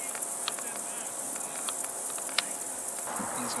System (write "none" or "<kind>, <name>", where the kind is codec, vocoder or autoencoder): none